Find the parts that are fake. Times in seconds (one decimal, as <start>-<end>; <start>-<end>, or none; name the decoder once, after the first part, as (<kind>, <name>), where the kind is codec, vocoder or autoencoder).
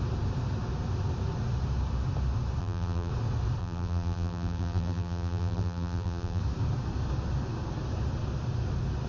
2.6-3.1 (vocoder, BigVGAN v2); 3.6-6.4